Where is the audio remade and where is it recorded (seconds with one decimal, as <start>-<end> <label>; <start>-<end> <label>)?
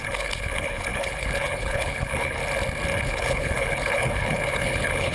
0.0-2.4 remade; 2.4-3.0 recorded; 3.0-5.1 remade